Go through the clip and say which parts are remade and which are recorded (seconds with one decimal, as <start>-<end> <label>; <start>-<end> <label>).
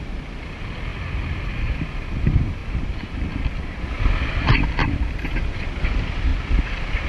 0.0-2.6 remade; 2.6-5.0 recorded; 5.0-6.3 remade; 6.3-7.1 recorded